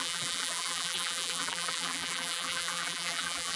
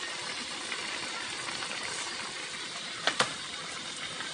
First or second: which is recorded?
second